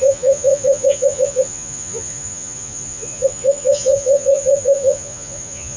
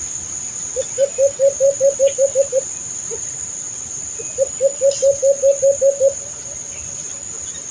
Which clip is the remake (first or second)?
first